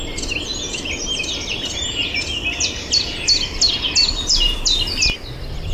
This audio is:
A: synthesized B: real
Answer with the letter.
B